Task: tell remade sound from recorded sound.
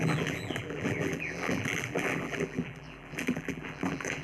remade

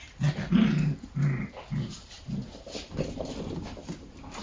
recorded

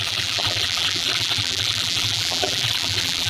remade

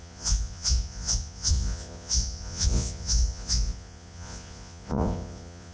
remade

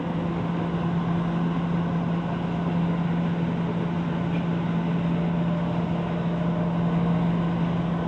recorded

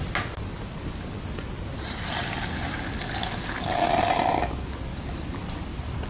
recorded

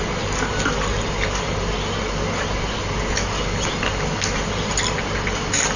recorded